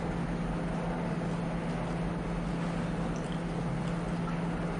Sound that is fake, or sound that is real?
real